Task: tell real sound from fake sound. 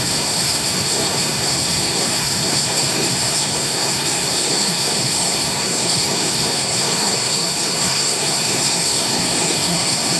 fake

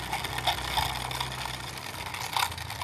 real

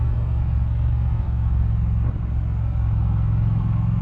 fake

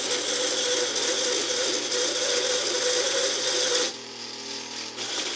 real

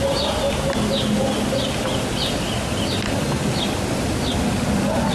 real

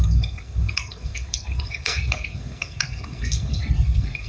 fake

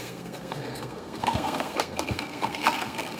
fake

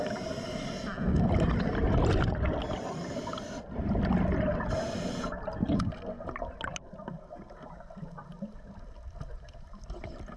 real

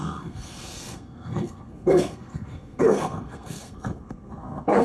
fake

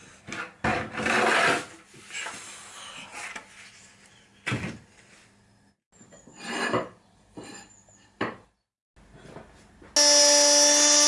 real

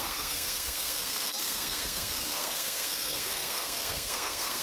fake